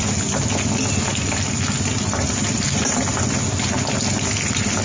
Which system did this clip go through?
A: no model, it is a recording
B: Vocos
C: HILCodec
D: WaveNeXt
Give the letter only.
A